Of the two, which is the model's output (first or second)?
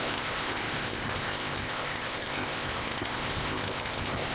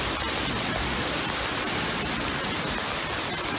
first